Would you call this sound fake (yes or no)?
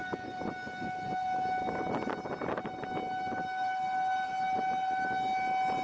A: no